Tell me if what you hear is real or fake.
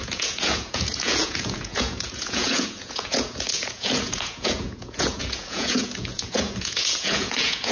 fake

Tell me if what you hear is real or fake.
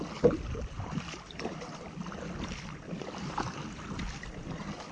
fake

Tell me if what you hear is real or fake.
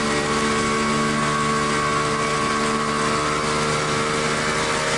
real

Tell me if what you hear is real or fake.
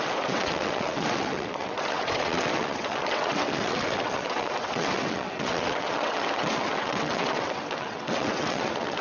fake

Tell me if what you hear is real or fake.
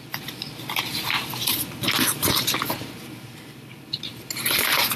fake